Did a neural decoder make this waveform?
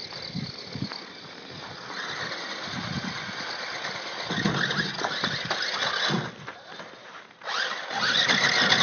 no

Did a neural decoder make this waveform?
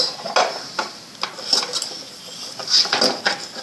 no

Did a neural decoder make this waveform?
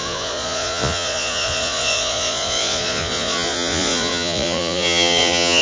yes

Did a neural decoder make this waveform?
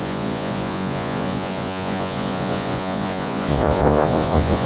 yes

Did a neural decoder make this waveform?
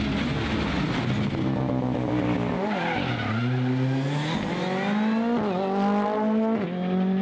no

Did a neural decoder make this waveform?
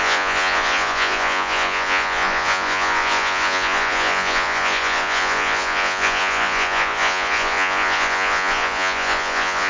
yes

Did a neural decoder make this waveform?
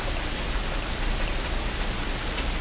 no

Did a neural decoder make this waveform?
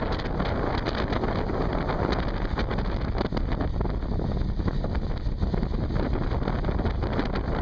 no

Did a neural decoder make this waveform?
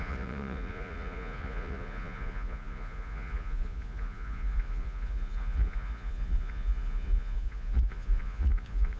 yes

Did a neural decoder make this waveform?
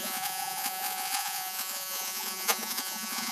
yes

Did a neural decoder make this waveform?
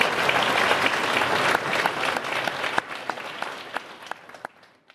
no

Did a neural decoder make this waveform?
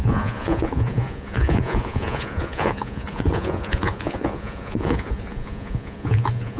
yes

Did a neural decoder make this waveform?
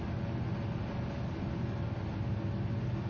no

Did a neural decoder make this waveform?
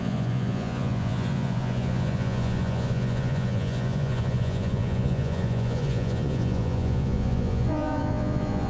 yes